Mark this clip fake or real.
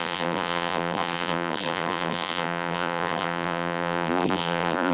fake